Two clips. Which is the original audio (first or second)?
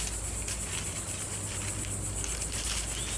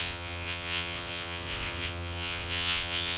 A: first